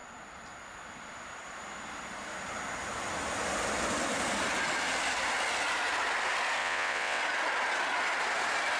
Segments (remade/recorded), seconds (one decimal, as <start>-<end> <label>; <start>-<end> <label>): 0.0-6.6 recorded; 6.6-7.2 remade; 7.2-8.8 recorded